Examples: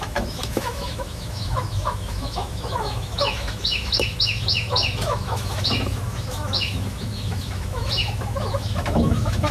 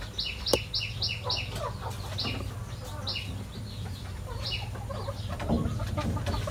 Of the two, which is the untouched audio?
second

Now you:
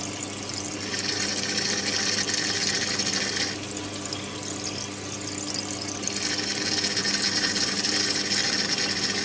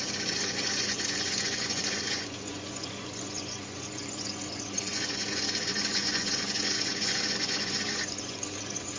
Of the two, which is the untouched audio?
first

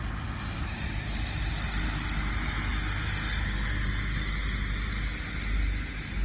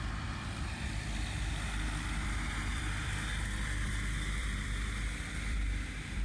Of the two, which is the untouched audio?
first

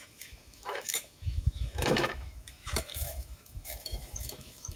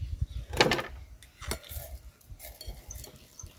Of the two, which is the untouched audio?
second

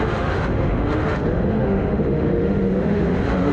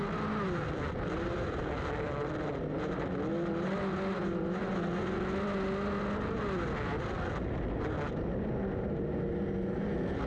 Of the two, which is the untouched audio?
second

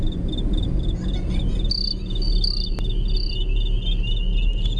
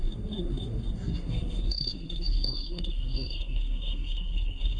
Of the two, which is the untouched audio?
first